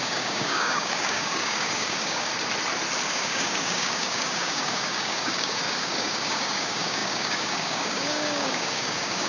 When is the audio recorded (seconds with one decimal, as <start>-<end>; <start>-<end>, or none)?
2.3-3.1